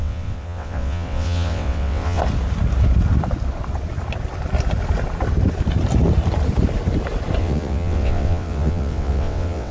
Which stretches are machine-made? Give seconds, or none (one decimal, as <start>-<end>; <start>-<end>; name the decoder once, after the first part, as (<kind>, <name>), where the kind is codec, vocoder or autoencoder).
0.0-2.2 (vocoder, WaveNeXt); 7.4-9.7